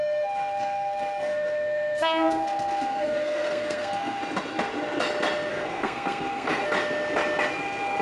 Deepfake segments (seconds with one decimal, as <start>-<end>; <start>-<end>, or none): 0.0-4.2; 5.5-6.6; 7.6-8.0